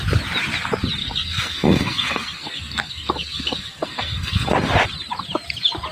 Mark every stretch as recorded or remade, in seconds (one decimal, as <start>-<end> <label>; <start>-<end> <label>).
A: 0.0-1.0 recorded; 1.0-4.5 remade; 4.5-5.9 recorded